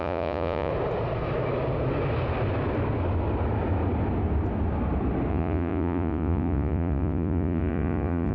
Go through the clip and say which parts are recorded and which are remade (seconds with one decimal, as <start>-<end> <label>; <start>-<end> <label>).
0.0-0.7 remade; 0.7-5.3 recorded; 5.3-8.3 remade